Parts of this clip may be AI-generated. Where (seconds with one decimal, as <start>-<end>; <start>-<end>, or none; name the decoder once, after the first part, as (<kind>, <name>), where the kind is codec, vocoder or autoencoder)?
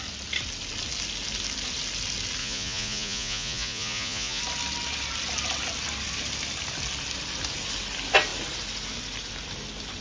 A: 2.4-4.4 (vocoder, Vocos)